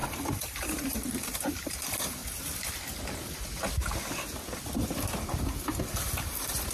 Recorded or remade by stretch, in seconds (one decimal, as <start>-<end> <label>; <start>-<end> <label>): 0.0-2.2 remade; 2.2-6.2 recorded; 6.2-6.7 remade